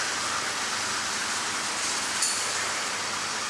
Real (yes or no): no